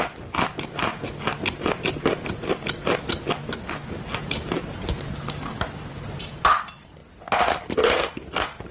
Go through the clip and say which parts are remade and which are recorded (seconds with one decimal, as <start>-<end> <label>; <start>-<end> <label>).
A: 0.0-8.7 recorded

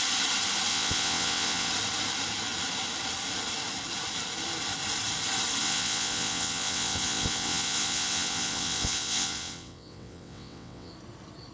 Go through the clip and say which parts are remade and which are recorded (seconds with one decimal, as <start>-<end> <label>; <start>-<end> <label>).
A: 0.0-0.7 recorded; 0.7-1.7 remade; 1.7-5.6 recorded; 5.6-10.9 remade; 10.9-11.5 recorded

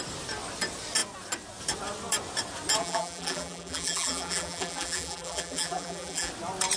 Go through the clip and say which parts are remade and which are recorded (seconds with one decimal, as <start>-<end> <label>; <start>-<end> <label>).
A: 0.0-2.8 recorded; 2.8-6.3 remade; 6.3-6.8 recorded